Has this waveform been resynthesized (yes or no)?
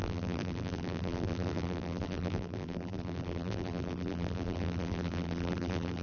yes